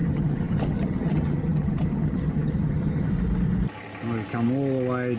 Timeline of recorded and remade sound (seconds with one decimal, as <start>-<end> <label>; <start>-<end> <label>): 0.0-3.1 remade; 3.1-5.2 recorded